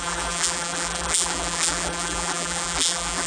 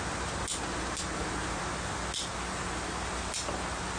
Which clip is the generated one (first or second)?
first